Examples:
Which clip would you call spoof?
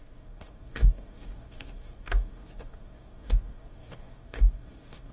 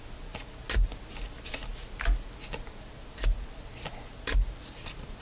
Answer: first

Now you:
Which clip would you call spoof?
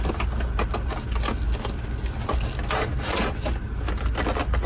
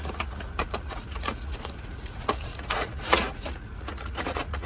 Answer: second